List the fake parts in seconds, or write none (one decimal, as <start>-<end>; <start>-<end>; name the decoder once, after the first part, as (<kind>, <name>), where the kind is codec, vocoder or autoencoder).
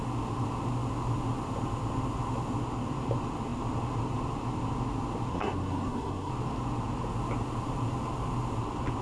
5.3-6.3 (codec, SNAC)